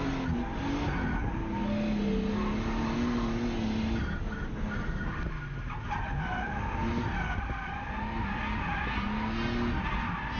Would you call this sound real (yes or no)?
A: yes